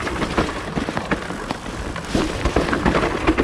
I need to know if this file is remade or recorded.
remade